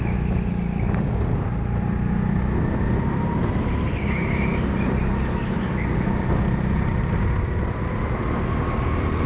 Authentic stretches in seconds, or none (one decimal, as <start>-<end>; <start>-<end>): 0.0-9.3